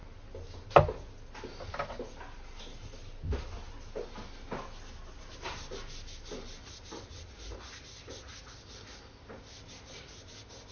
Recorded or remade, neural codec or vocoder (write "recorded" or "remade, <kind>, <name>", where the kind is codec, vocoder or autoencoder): recorded